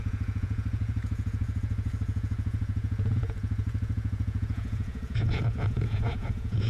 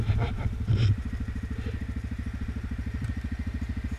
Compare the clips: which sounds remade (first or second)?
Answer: first